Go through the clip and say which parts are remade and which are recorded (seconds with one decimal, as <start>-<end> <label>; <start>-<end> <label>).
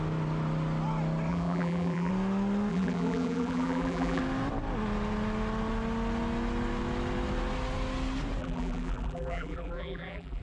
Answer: 0.0-1.3 recorded; 1.3-2.1 remade; 2.1-2.7 recorded; 2.7-4.2 remade; 4.2-8.4 recorded; 8.4-10.4 remade